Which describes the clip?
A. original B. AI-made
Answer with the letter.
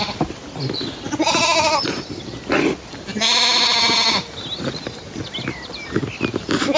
A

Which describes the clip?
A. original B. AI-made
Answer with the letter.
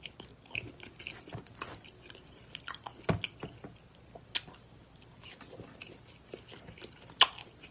A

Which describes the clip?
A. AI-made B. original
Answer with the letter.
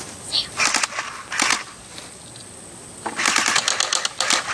B